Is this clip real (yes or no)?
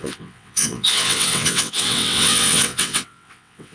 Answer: no